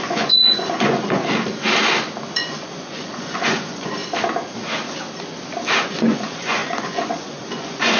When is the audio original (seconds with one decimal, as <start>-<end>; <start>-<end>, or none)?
1.2-2.3; 4.0-5.8